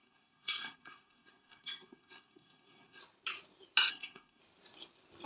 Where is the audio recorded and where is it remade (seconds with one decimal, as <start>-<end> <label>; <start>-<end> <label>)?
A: 0.0-3.0 remade; 3.0-3.9 recorded; 3.9-4.4 remade; 4.4-5.3 recorded